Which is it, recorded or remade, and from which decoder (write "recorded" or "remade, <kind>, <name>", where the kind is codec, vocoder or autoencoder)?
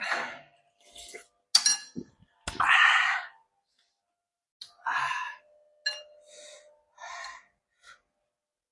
recorded